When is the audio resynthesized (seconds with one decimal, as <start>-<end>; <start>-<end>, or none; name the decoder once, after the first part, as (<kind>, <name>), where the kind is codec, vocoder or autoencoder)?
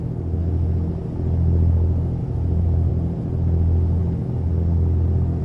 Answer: 2.2-2.9 (vocoder, Vocos)